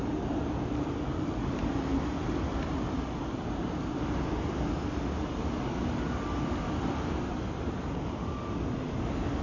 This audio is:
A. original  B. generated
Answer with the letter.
A